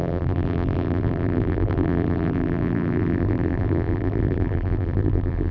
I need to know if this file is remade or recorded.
remade